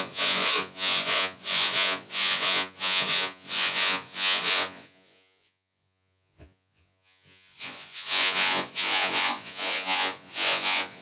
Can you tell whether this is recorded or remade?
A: remade